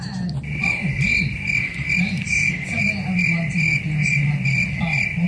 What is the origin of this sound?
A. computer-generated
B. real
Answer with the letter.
B